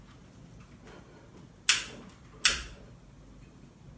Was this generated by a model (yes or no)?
no